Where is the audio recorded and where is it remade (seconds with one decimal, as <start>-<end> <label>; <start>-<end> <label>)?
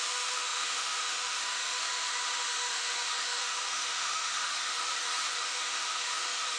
0.0-6.6 remade